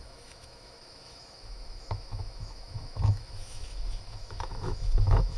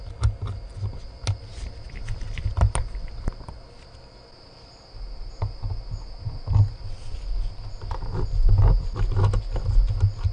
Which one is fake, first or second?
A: first